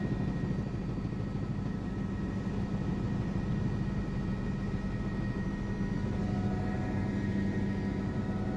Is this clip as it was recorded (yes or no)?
yes